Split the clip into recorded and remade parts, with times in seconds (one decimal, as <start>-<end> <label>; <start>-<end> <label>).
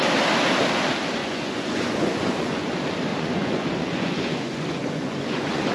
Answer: 0.0-1.2 recorded; 1.2-2.7 remade; 2.7-3.1 recorded; 3.1-5.7 remade